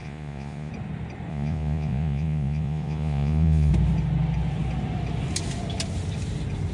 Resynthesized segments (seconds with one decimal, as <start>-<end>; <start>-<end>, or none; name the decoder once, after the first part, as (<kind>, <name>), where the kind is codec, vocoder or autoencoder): 0.0-0.7 (vocoder, Vocos); 1.3-3.7